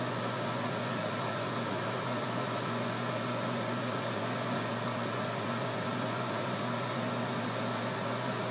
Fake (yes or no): yes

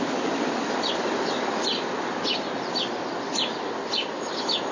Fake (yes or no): no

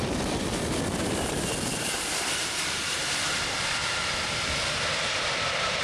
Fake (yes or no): no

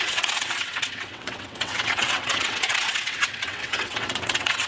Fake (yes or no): yes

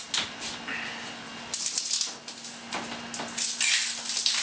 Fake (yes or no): no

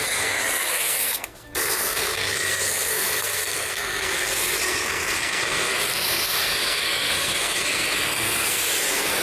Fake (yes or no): yes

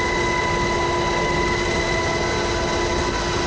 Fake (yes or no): no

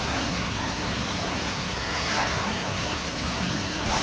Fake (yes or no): yes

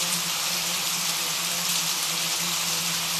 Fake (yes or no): no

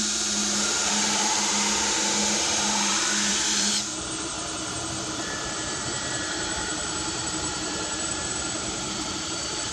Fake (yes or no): yes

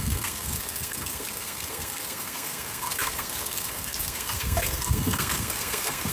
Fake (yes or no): yes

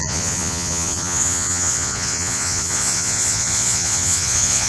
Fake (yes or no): yes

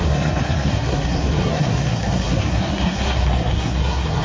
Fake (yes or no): yes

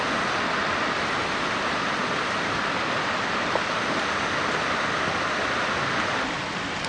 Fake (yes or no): no